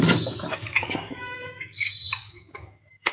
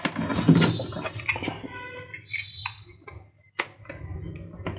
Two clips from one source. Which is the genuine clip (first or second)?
second